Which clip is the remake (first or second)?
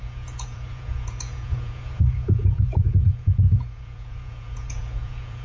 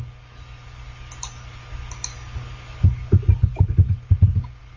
first